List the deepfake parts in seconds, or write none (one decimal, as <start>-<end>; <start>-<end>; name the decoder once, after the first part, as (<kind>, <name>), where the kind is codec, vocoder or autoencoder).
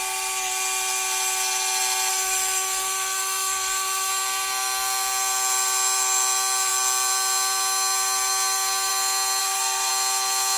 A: 2.1-4.1 (codec, SNAC); 9.4-9.9